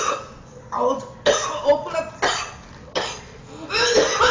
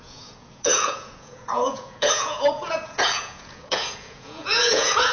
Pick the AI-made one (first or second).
second